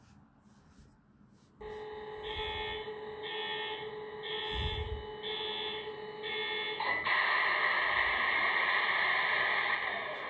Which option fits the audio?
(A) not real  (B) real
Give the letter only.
B